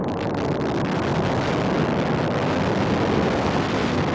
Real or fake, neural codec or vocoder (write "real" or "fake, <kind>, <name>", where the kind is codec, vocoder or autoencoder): real